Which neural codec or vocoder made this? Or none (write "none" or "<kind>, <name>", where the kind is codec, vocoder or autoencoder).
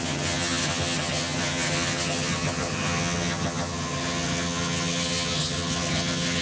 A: vocoder, HiFi-GAN